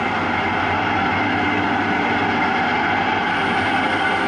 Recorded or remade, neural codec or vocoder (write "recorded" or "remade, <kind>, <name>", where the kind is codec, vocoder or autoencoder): recorded